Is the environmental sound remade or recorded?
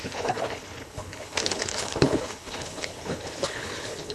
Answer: remade